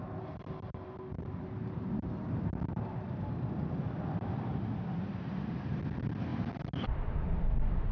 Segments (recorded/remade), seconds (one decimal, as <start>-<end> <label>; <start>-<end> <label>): 0.0-7.9 recorded